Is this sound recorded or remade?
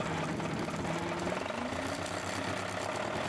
recorded